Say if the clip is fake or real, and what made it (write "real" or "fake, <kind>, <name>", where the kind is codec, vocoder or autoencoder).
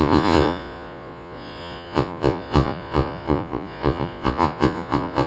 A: fake, vocoder, Vocos